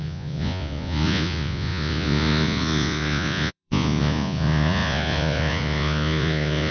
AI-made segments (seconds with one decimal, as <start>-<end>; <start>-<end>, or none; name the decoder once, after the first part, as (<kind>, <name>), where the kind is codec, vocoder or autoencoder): 0.0-6.7 (vocoder, Vocos)